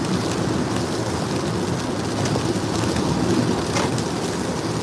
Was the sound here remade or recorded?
recorded